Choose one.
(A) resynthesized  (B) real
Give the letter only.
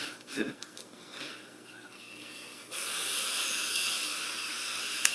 A